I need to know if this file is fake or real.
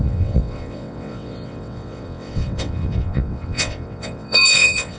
fake